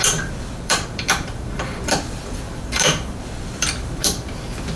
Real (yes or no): no